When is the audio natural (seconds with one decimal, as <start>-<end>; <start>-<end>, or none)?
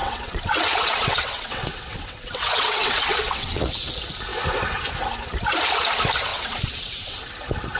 3.9-6.3; 7.2-7.8